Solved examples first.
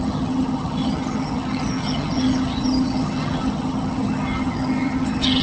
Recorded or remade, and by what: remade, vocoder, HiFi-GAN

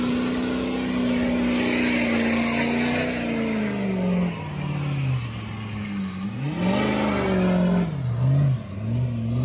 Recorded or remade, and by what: recorded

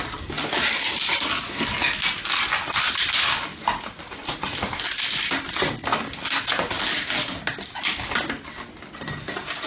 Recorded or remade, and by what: recorded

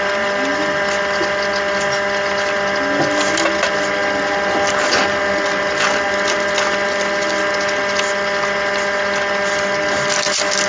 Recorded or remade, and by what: recorded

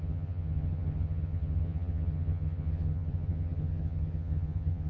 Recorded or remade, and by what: remade, vocoder, HiFi-GAN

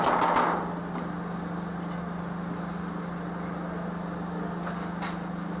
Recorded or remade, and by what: recorded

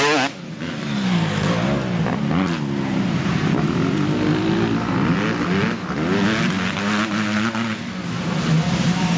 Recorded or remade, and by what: recorded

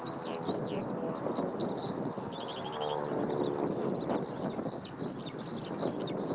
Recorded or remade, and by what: recorded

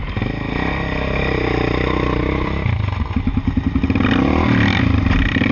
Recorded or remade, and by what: recorded